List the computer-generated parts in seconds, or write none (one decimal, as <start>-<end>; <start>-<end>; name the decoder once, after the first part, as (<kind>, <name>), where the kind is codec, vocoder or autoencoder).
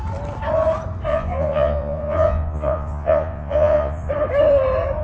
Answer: 1.1-4.1 (vocoder, Vocos)